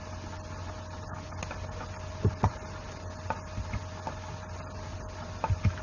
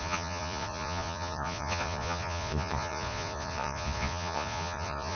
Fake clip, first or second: second